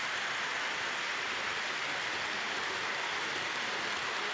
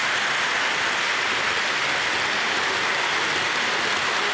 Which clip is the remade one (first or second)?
first